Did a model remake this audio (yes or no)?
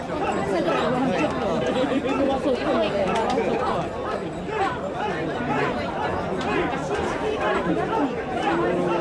no